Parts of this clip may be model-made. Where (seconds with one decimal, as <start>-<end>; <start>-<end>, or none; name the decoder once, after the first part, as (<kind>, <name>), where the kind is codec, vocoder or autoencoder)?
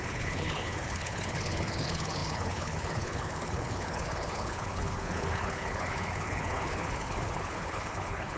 0.0-8.4 (codec, HILCodec)